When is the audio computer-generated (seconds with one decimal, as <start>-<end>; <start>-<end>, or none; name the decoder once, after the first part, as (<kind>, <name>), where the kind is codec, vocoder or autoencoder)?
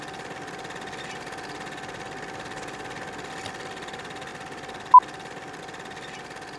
none